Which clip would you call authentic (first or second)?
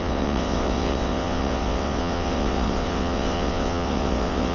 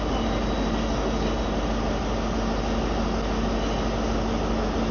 second